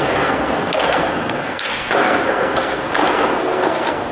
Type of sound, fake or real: fake